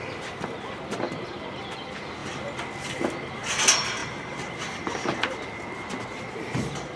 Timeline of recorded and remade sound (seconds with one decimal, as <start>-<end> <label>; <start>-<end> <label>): 0.0-7.0 recorded